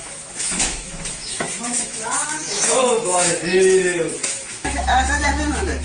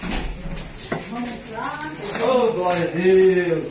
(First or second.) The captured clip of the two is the second